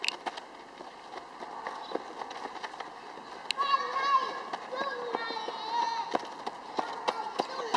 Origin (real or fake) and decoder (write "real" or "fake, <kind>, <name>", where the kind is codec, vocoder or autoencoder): real